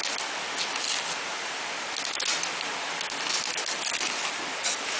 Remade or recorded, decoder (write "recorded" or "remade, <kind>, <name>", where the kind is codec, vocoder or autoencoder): recorded